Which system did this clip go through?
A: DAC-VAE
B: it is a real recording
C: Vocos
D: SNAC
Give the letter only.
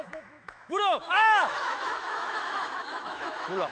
A